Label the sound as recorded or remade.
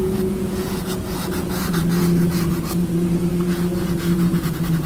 remade